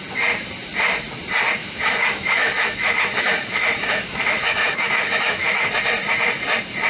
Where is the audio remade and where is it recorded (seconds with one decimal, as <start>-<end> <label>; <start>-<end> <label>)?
0.0-1.6 recorded; 1.6-5.7 remade; 5.7-6.9 recorded

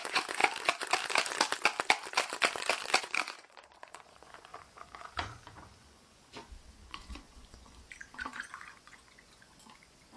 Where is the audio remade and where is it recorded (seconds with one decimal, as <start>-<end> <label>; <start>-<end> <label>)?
0.0-0.4 remade; 0.4-3.0 recorded; 3.0-10.2 remade

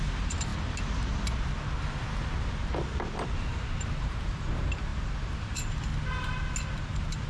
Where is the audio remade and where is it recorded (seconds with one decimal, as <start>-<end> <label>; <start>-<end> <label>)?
0.0-0.5 remade; 0.5-3.9 recorded; 3.9-5.9 remade; 5.9-6.8 recorded; 6.8-7.3 remade

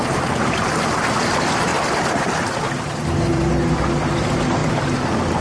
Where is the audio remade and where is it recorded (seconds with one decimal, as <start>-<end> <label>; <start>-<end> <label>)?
0.0-5.4 recorded